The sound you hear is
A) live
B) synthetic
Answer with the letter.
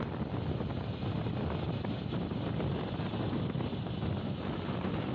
A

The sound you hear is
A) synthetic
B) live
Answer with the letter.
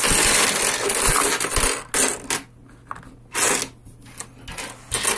B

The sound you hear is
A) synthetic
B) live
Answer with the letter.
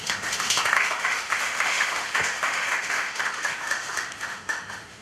A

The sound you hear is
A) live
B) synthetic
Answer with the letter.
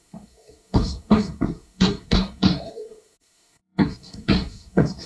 B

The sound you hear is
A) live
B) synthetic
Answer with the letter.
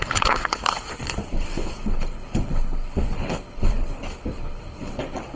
B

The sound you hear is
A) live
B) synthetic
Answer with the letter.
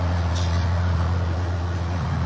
B